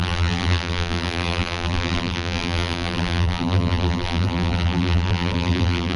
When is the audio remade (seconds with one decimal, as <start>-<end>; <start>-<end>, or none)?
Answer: 0.0-6.0